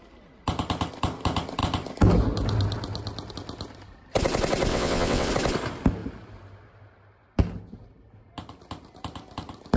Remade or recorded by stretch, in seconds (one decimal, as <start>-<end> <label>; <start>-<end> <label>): 0.0-4.7 recorded; 4.7-5.3 remade; 5.3-9.8 recorded